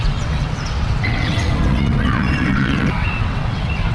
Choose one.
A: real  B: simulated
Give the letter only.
B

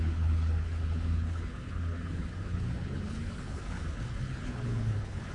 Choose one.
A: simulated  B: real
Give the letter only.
A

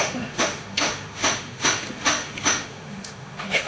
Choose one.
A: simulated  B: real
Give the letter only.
A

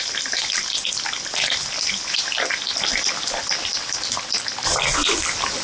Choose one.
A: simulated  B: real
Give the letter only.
B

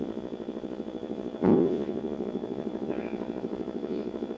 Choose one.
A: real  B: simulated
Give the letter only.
B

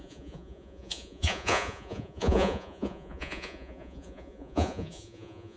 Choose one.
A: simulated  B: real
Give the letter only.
A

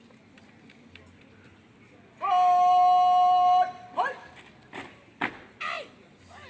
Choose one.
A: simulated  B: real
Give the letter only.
B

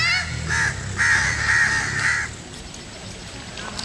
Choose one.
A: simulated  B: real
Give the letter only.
B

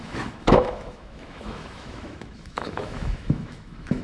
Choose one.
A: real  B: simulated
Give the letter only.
B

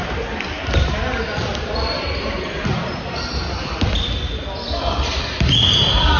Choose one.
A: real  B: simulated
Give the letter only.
A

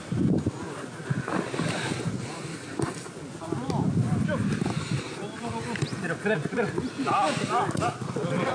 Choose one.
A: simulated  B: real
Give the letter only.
B